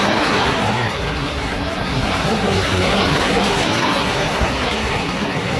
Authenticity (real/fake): fake